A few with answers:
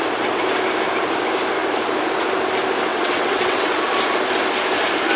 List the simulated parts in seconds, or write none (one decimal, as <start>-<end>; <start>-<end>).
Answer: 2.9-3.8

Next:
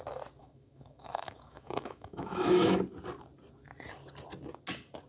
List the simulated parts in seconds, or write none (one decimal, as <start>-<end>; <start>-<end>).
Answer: 0.4-2.8

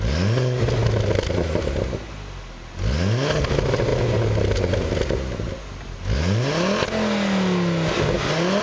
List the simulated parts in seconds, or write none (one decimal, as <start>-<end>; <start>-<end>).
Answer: none

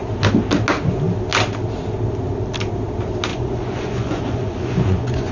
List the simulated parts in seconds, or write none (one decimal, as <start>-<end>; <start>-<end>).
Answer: 3.3-5.3